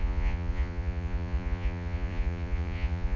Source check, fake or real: fake